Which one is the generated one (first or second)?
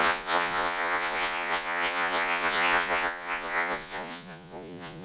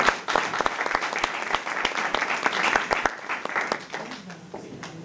first